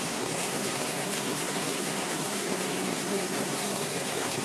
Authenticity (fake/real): fake